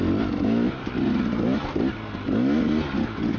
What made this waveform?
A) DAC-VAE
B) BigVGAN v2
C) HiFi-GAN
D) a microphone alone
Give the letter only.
D